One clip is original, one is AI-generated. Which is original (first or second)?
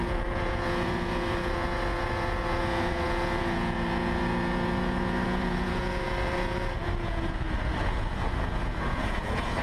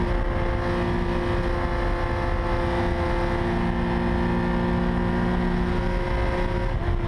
second